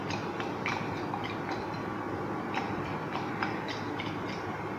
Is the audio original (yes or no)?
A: yes